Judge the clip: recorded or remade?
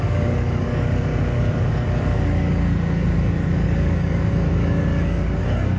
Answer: remade